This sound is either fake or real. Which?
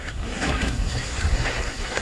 fake